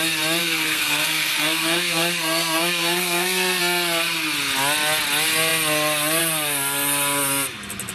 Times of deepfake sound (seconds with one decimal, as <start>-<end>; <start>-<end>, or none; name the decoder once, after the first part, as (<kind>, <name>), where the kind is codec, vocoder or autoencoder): 0.4-3.6 (codec, SNAC)